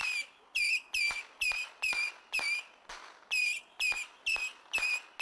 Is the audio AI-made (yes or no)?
no